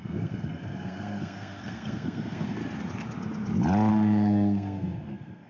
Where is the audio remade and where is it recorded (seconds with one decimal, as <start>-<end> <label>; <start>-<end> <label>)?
0.0-2.6 remade; 2.6-3.9 recorded; 3.9-5.5 remade

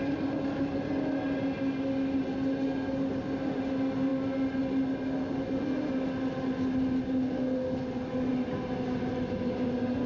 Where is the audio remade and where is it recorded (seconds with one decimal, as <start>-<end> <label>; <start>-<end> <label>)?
0.0-10.1 recorded

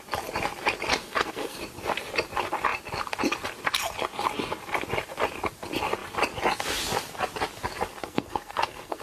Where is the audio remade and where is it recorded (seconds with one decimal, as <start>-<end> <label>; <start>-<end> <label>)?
0.0-0.9 recorded; 0.9-1.6 remade; 1.6-8.0 recorded; 8.0-9.0 remade

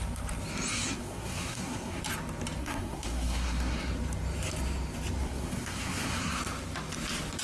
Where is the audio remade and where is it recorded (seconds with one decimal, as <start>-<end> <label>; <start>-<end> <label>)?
0.0-0.7 recorded; 0.7-2.0 remade; 2.0-2.6 recorded; 2.6-3.9 remade; 3.9-5.2 recorded; 5.2-6.4 remade; 6.4-7.4 recorded

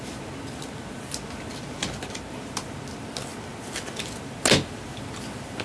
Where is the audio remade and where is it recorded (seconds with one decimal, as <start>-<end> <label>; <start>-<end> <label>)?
0.0-5.6 recorded

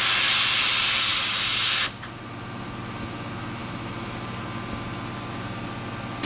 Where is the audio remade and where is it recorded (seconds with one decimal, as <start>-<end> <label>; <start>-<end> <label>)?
0.0-6.3 recorded

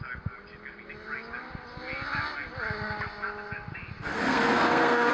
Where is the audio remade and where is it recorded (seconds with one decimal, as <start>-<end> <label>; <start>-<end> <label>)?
0.0-4.1 recorded; 4.1-5.1 remade